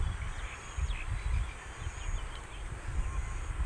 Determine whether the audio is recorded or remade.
recorded